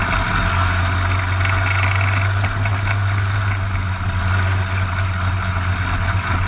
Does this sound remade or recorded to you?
recorded